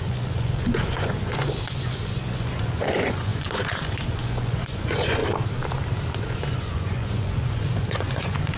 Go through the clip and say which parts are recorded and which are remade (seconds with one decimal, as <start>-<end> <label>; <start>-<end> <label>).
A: 0.0-5.2 remade; 5.2-6.2 recorded; 6.2-8.6 remade

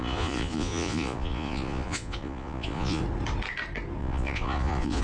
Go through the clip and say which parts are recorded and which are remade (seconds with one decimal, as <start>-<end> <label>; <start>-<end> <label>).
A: 0.0-3.0 remade; 3.0-4.0 recorded; 4.0-5.0 remade

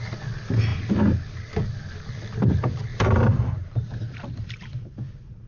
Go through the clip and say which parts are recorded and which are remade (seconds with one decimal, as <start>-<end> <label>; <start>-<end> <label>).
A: 0.0-2.9 recorded; 2.9-4.6 remade; 4.6-5.5 recorded

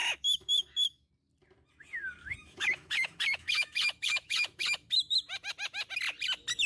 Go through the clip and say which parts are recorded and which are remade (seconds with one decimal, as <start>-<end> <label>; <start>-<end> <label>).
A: 0.0-1.1 remade; 1.1-2.4 recorded; 2.4-5.2 remade; 5.2-6.7 recorded